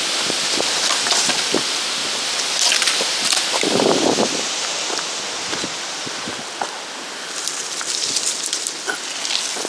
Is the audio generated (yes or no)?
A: no